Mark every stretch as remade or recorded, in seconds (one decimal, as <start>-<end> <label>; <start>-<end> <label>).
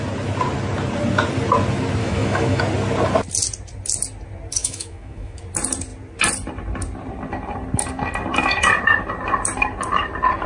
0.0-2.0 recorded; 2.0-2.6 remade; 2.6-4.6 recorded; 4.6-5.4 remade; 5.4-10.5 recorded